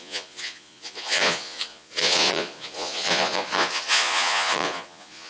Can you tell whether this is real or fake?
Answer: fake